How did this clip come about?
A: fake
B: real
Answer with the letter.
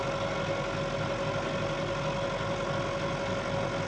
B